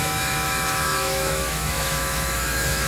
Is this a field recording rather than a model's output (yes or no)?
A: no